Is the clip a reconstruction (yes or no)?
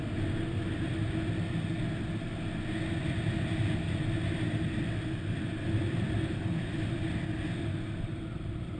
no